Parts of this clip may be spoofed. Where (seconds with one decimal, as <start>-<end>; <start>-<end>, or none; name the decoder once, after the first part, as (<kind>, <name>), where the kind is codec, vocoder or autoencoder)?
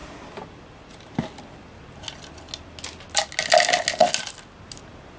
none